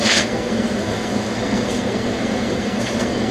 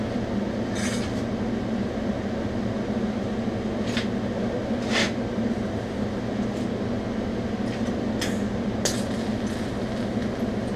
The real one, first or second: second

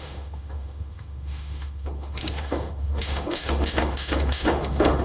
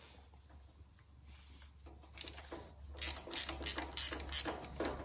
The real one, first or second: second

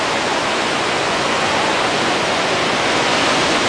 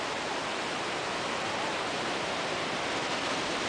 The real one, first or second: second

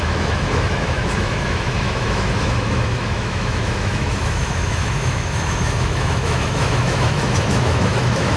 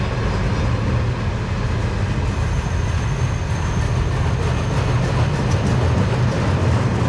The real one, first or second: second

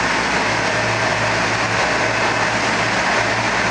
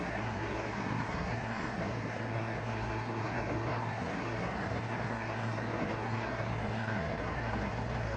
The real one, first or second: first